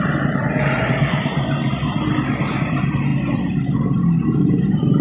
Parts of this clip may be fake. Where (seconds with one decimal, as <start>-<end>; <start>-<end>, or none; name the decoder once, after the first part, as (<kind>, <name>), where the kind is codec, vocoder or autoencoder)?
0.0-1.6 (vocoder, BigVGAN v2); 2.5-3.1; 4.2-5.0